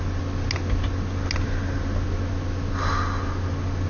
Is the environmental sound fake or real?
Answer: real